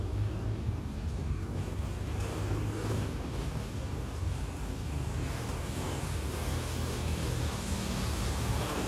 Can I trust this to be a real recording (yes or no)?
no